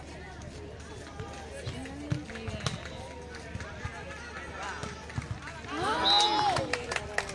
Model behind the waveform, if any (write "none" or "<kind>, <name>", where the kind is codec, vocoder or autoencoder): none